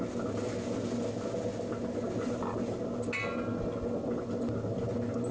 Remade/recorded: recorded